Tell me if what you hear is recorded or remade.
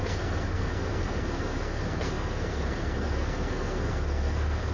remade